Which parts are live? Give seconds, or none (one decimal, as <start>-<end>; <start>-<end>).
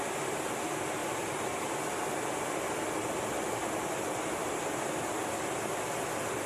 0.0-1.0; 1.5-6.5